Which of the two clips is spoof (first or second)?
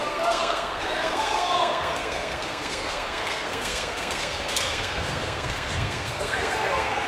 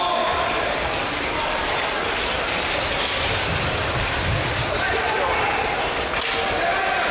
first